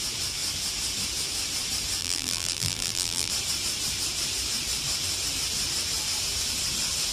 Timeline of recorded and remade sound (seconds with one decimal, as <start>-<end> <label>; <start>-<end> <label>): 0.0-2.0 recorded; 2.0-3.3 remade; 3.3-7.1 recorded